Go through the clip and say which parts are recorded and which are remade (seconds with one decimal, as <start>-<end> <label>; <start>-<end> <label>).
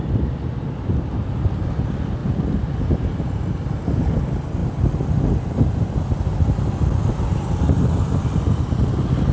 0.0-9.3 recorded